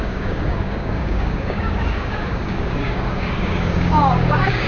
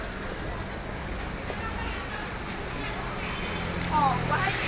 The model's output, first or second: first